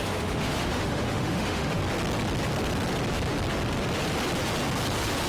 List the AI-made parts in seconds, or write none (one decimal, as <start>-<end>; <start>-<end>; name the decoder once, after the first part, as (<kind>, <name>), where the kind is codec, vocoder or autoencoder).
0.0-1.8 (autoencoder, DAC-VAE)